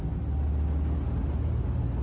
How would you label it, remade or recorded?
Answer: recorded